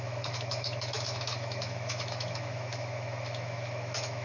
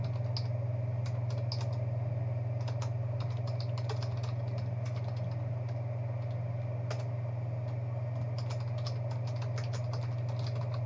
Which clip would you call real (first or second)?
second